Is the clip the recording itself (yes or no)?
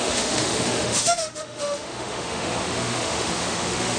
no